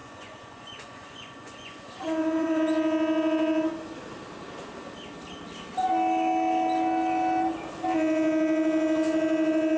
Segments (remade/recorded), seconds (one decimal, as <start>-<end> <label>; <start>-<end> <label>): 0.0-2.6 remade; 2.6-9.8 recorded